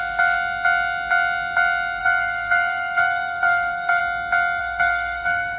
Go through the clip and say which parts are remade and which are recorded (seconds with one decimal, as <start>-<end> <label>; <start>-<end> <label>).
0.0-2.0 recorded; 2.0-4.0 remade; 4.0-4.6 recorded; 4.6-5.6 remade